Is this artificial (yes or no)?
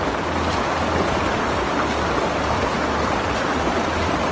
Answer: no